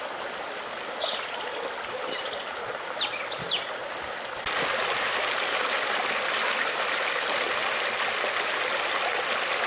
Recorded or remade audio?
recorded